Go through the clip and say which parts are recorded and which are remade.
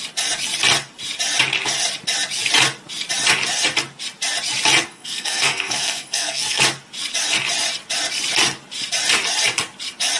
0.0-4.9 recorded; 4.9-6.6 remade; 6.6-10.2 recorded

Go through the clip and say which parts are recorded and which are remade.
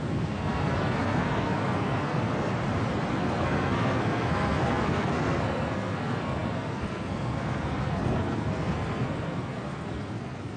0.0-2.5 remade; 2.5-3.1 recorded; 3.1-10.6 remade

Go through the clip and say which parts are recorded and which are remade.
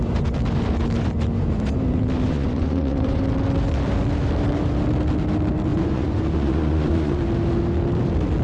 0.0-2.3 recorded; 2.3-3.2 remade; 3.2-5.7 recorded; 5.7-7.2 remade; 7.2-8.4 recorded